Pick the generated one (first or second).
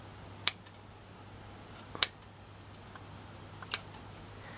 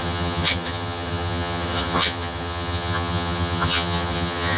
second